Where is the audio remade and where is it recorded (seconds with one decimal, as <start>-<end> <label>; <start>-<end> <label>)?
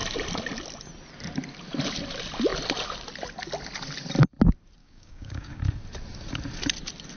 0.0-4.8 recorded; 4.8-5.6 remade; 5.6-7.2 recorded